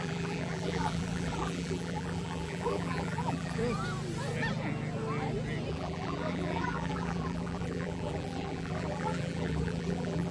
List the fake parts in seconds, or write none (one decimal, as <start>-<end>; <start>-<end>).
0.0-3.6; 5.7-10.3